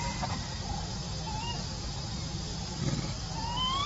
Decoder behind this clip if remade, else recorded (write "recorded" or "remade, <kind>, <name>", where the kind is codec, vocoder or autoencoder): recorded